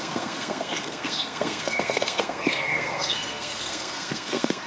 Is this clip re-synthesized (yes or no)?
yes